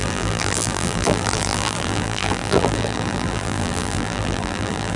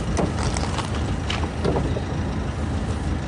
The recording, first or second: second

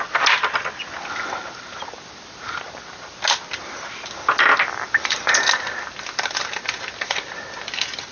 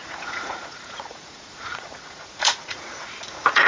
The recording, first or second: first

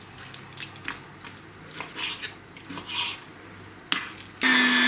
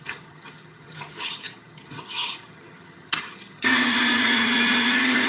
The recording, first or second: first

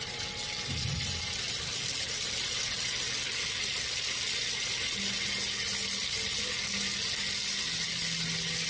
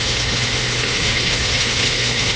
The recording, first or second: first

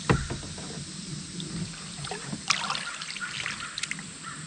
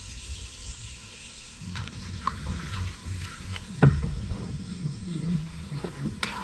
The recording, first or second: first